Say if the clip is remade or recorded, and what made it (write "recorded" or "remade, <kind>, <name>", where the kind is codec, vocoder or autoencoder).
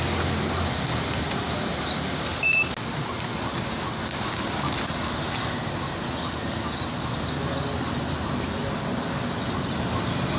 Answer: recorded